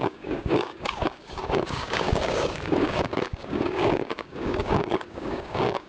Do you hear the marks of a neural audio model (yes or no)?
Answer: yes